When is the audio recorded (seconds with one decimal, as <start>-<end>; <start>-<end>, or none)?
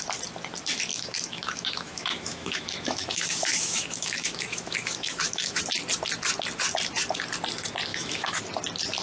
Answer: 0.0-0.9; 5.6-7.9; 8.4-9.0